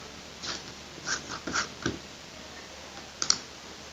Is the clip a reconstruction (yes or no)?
no